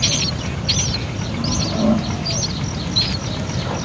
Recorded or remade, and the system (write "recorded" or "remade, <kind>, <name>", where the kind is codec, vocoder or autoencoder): recorded